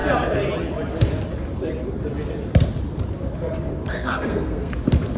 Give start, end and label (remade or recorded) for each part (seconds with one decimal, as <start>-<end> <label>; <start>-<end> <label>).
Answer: 0.0-3.8 recorded; 3.8-4.7 remade; 4.7-5.2 recorded